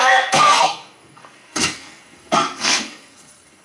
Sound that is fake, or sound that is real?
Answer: fake